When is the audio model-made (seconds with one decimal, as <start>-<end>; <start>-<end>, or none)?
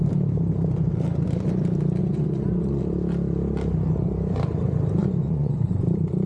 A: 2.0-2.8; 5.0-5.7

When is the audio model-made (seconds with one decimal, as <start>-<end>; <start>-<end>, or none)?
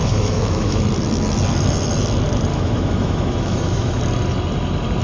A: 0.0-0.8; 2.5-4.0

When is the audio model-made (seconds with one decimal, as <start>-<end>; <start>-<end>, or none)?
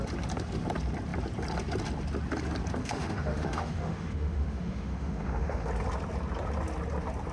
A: 2.8-5.7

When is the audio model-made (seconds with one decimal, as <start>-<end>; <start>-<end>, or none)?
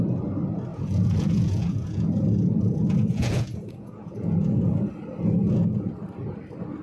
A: 0.7-4.8; 5.4-5.9